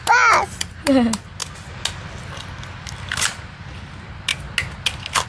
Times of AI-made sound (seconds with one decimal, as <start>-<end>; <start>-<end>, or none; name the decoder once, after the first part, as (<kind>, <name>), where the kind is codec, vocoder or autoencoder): none